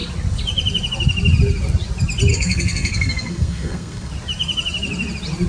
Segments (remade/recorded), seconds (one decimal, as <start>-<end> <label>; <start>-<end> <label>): 0.0-2.3 recorded; 2.3-4.1 remade; 4.1-5.5 recorded